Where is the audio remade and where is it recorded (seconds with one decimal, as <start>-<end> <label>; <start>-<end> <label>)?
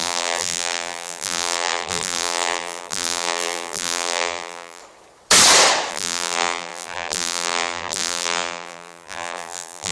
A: 0.0-4.8 remade; 4.8-5.9 recorded; 5.9-9.9 remade